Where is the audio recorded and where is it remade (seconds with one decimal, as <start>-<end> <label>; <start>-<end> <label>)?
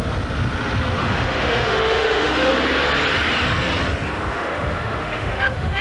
0.0-1.0 recorded; 1.0-2.5 remade; 2.5-4.3 recorded; 4.3-5.8 remade